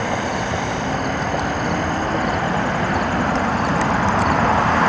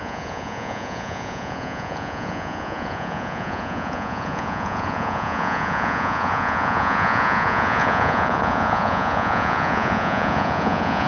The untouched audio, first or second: first